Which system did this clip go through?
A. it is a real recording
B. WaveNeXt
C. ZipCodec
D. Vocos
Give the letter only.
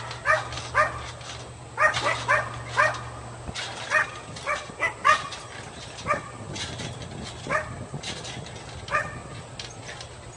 A